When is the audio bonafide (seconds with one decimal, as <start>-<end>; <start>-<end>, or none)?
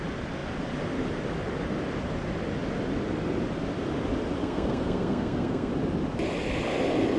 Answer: 0.0-4.4; 5.7-7.2